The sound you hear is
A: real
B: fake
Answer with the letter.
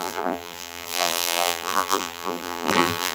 B